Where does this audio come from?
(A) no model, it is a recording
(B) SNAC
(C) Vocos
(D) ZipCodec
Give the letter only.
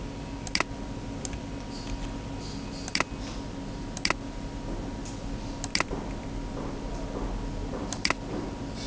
A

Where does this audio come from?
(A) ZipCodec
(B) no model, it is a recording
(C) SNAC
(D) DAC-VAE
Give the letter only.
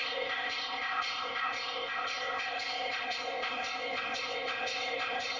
A